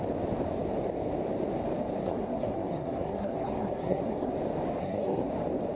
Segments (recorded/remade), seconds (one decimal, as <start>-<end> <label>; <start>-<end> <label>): 0.0-2.0 recorded; 2.0-4.3 remade; 4.3-4.8 recorded; 4.8-5.3 remade; 5.3-5.8 recorded